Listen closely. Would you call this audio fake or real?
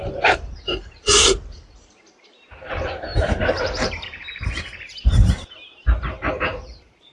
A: fake